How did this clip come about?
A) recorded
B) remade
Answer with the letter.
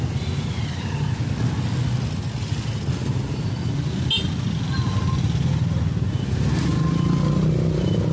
A